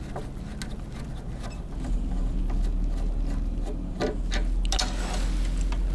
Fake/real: real